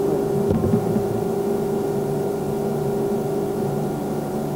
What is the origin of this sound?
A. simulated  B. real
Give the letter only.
B